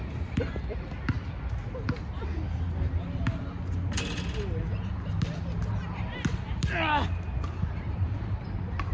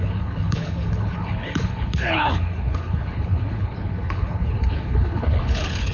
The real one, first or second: first